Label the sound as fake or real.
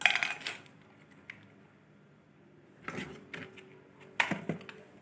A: real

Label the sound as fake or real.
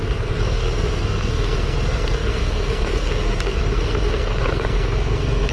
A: fake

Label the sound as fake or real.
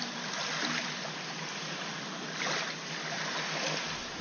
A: real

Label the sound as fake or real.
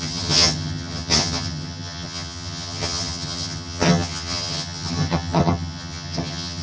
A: fake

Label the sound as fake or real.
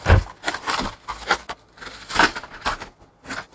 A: real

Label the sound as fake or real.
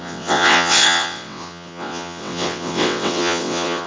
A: fake